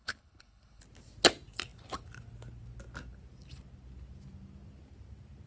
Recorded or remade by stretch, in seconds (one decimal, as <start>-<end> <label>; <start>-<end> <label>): 0.0-0.8 remade; 0.8-5.5 recorded